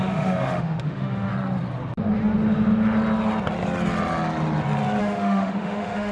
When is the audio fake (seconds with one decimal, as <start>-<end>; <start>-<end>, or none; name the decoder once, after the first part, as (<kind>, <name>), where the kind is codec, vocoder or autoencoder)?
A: 0.0-1.3 (autoencoder, DAC-VAE); 5.0-6.1